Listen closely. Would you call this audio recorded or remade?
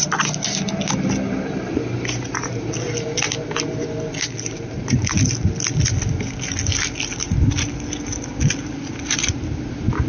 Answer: recorded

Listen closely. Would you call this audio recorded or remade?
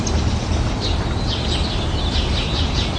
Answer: recorded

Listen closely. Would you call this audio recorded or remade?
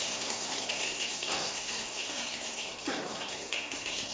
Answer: remade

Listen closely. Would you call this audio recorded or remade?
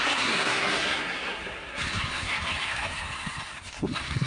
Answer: remade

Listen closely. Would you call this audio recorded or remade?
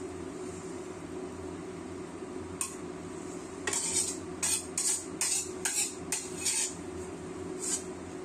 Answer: recorded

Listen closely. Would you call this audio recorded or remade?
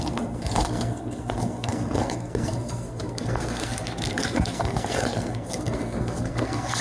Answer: remade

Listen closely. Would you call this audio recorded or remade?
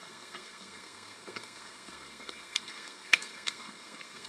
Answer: remade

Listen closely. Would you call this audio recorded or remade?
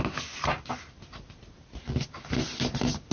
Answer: recorded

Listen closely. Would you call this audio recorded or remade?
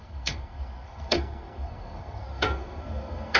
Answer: remade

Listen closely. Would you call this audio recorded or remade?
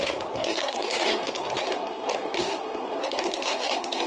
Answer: remade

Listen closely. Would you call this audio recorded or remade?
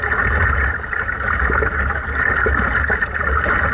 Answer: recorded